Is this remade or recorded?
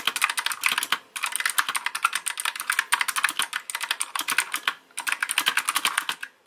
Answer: recorded